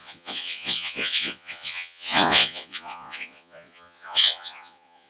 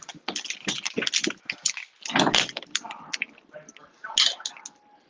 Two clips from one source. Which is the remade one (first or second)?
first